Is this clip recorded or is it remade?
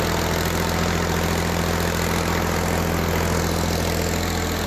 recorded